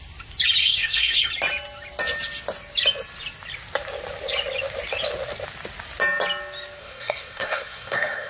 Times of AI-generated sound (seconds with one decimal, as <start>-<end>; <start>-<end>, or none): 0.6-1.3; 6.8-8.3